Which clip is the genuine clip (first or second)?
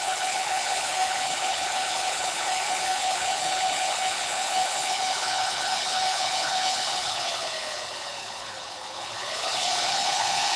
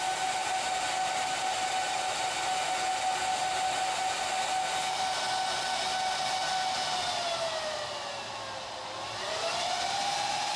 second